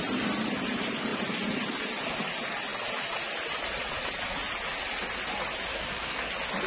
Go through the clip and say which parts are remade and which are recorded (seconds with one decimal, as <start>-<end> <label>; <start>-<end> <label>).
0.0-5.7 recorded; 5.7-6.3 remade; 6.3-6.7 recorded